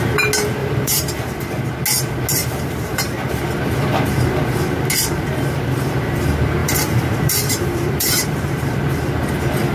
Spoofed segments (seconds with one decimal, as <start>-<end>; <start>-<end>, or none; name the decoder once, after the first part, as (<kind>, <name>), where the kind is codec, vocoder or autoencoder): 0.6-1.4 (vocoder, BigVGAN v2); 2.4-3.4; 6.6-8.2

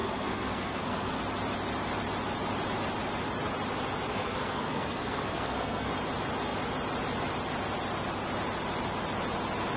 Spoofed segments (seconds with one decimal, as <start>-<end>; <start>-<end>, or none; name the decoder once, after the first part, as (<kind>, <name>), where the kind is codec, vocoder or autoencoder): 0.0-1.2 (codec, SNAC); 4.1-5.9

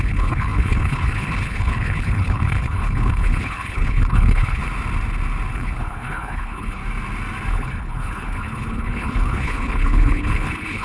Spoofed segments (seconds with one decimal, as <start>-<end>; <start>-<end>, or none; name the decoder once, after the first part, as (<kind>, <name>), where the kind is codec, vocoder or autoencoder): 0.0-4.6 (codec, HILCodec); 5.5-6.8; 7.5-10.8

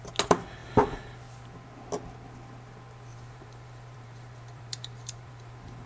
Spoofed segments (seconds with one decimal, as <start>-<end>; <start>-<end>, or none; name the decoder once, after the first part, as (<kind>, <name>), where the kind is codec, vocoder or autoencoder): 3.1-5.9 (vocoder, BigVGAN v2)